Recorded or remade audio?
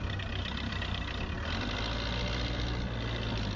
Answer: recorded